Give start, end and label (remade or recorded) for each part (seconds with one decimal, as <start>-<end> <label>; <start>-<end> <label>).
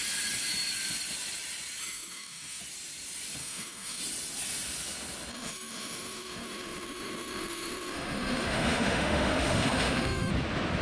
0.0-1.8 recorded; 1.8-2.6 remade; 2.6-3.4 recorded; 3.4-4.0 remade; 4.0-5.3 recorded; 5.3-10.3 remade; 10.3-10.8 recorded